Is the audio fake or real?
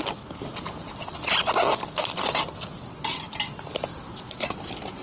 real